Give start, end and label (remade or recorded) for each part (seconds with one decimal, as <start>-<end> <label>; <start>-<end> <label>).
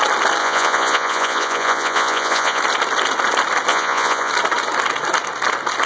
0.0-0.4 recorded; 0.4-2.6 remade; 2.6-3.7 recorded; 3.7-4.3 remade; 4.3-5.9 recorded